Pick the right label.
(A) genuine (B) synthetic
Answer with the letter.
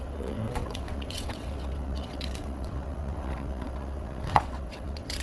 B